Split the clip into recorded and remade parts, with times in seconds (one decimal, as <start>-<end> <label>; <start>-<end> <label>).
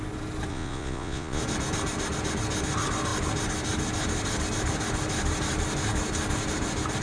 0.0-0.5 recorded; 0.5-1.4 remade; 1.4-7.0 recorded